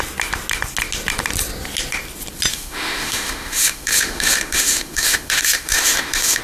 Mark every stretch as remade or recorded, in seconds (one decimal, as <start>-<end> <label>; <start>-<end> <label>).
0.0-2.5 recorded; 2.5-6.4 remade